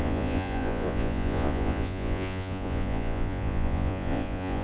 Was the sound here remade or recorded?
remade